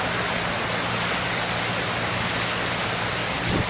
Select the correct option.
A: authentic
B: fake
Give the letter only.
A